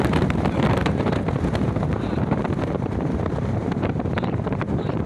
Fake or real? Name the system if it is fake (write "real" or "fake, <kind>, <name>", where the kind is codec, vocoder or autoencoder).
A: fake, vocoder, BigVGAN v2